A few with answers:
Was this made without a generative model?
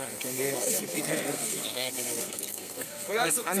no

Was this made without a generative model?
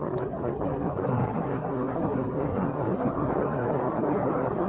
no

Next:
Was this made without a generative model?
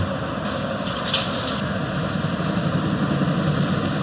yes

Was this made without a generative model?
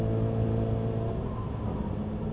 yes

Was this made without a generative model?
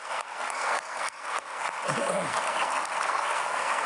no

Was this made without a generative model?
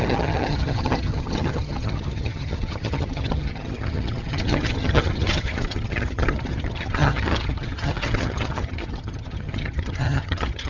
no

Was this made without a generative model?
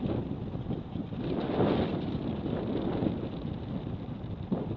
yes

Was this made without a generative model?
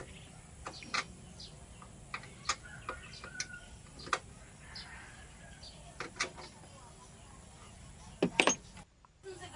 yes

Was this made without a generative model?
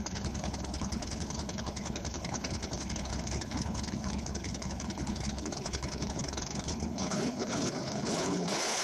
no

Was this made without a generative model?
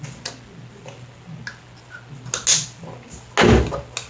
yes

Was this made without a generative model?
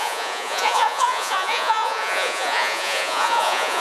no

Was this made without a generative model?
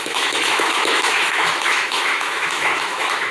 no